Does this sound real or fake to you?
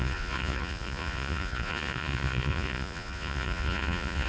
fake